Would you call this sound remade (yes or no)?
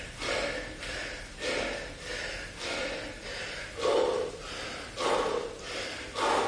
no